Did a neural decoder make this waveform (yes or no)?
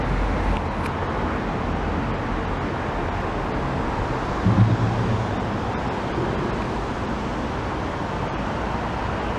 no